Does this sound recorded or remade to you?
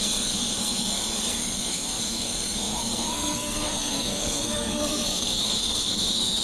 remade